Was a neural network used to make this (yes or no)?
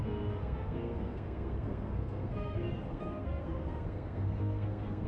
yes